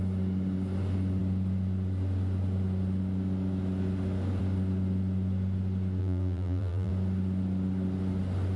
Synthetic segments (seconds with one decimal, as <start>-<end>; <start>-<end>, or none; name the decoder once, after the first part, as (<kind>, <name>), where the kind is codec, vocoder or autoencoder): 6.0-6.9 (vocoder, BigVGAN v2)